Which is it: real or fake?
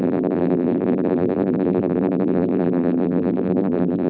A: fake